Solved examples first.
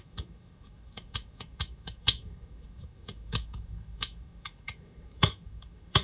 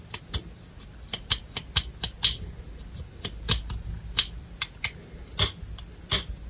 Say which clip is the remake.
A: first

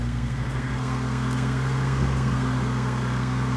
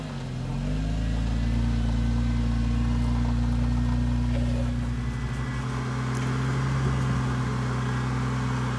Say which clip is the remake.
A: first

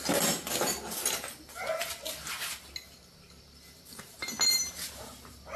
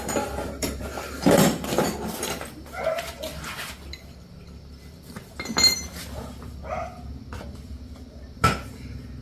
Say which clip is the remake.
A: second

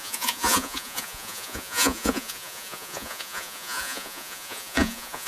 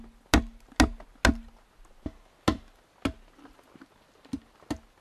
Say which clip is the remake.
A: first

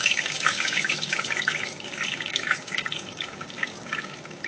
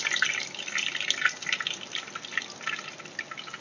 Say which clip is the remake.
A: first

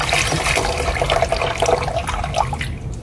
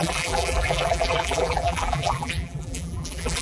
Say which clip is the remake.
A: second